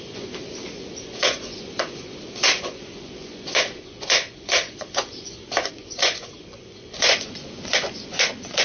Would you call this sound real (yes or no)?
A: no